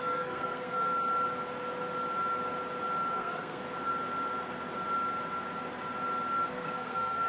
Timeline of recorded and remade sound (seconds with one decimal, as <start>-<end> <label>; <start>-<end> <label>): 0.0-0.9 remade; 0.9-3.1 recorded; 3.1-3.6 remade; 3.6-6.5 recorded; 6.5-7.3 remade